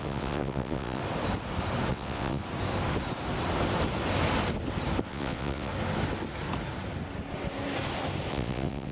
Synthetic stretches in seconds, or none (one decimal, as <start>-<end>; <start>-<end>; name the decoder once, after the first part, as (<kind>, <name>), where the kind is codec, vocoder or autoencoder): 0.0-1.0 (vocoder, WaveNeXt); 1.9-2.4; 5.1-5.7; 8.3-8.9